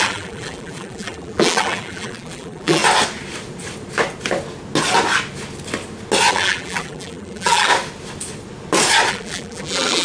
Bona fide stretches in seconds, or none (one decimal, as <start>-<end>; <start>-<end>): 2.8-6.3; 7.7-9.1